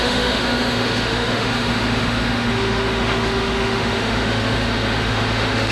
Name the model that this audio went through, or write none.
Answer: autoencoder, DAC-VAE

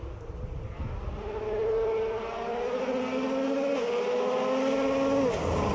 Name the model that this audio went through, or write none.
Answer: none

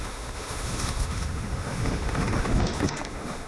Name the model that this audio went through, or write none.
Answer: autoencoder, DAC-VAE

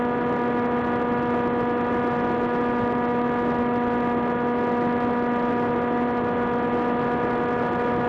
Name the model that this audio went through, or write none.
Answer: none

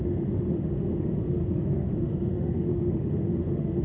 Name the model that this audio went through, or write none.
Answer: autoencoder, DAC-VAE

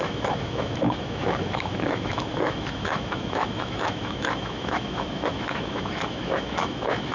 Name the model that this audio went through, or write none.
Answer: autoencoder, DAC-VAE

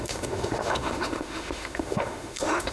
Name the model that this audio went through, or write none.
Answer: autoencoder, DAC-VAE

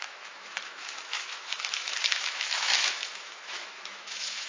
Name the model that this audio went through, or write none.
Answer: autoencoder, DAC-VAE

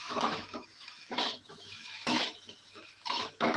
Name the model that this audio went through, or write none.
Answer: autoencoder, DAC-VAE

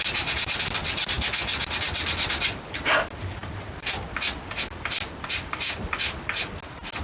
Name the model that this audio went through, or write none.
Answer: none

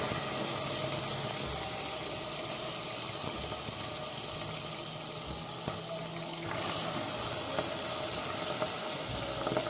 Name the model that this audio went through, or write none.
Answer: none